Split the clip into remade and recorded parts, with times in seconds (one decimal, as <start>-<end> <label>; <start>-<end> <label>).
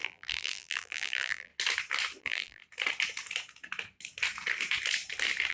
0.0-1.5 remade; 1.5-2.2 recorded; 2.2-2.6 remade; 2.6-5.5 recorded